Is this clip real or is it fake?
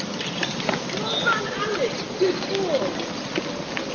real